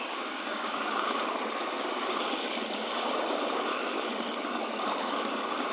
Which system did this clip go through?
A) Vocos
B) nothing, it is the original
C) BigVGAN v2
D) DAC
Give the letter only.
D